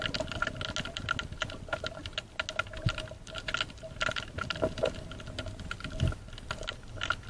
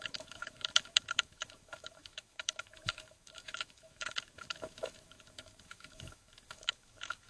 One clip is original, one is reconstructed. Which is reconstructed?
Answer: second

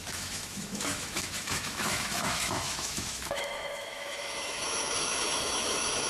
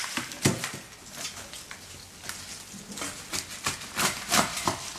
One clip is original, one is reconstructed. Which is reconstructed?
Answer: first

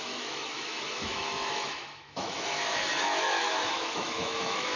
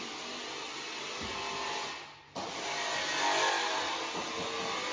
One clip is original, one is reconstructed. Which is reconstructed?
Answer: first